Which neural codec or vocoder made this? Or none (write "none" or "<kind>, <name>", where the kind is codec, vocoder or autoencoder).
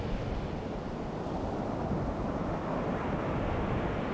none